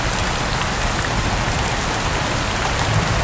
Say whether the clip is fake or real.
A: real